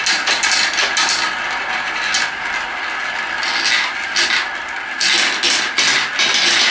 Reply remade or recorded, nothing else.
recorded